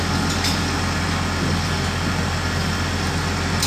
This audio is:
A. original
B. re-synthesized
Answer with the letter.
A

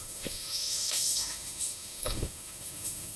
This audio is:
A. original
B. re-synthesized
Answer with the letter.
B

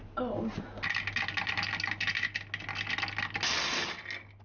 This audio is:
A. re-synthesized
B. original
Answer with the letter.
B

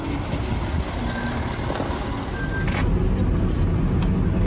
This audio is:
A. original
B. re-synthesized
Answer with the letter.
A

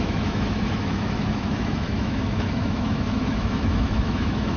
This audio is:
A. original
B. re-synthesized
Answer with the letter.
B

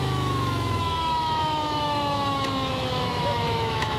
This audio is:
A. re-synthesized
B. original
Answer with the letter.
A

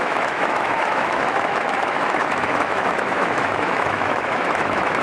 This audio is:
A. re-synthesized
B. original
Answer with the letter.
A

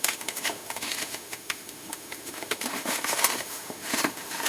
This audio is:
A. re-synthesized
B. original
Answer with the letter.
A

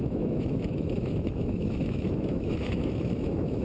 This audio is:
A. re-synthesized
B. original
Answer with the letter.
A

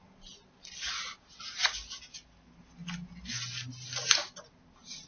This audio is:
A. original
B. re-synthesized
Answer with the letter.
A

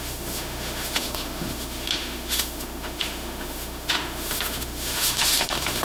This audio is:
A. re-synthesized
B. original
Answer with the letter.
A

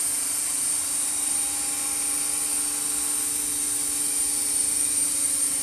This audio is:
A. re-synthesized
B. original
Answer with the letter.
B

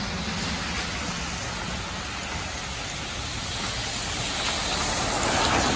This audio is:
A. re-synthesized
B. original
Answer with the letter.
B